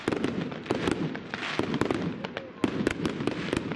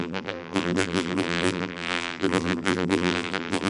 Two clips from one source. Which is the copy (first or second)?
second